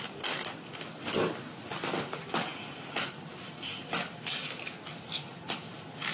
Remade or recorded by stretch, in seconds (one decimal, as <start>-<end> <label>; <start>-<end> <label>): 0.0-6.1 recorded